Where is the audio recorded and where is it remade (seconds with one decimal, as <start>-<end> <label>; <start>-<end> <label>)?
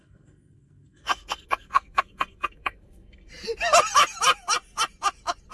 0.0-3.3 remade; 3.3-5.5 recorded